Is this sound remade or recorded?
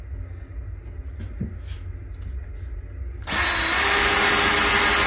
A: recorded